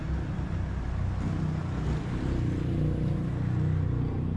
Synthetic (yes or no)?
no